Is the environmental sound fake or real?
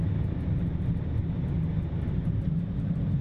real